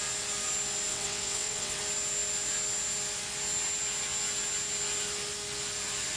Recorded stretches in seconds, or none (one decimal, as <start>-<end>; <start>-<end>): 0.0-0.9; 1.8-6.2